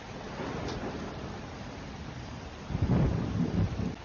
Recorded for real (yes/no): yes